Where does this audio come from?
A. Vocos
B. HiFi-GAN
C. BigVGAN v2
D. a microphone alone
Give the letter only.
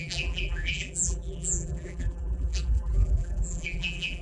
C